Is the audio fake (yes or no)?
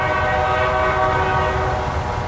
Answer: no